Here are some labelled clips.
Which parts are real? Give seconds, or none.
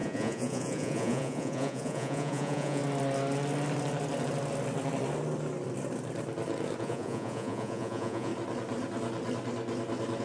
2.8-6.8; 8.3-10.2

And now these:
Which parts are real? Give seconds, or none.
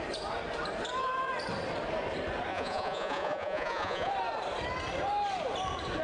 0.0-2.5; 4.1-6.0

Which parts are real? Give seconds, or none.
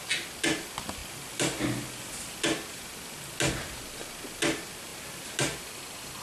0.0-6.2